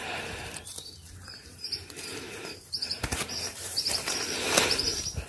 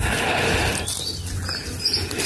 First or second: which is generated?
first